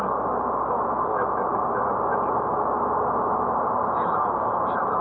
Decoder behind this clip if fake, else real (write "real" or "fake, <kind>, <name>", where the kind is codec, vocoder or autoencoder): real